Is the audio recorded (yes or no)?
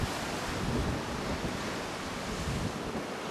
yes